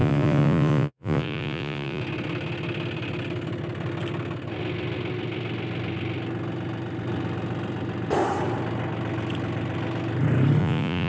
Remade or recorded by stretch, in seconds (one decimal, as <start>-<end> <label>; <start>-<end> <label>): 0.0-2.0 remade; 2.0-10.6 recorded; 10.6-11.1 remade